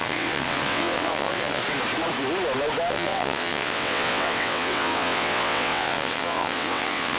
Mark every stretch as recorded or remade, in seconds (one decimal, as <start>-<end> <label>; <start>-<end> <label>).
0.0-1.6 remade; 1.6-2.9 recorded; 2.9-7.2 remade